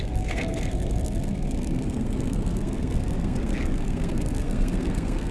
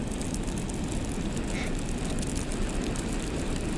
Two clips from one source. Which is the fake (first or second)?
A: first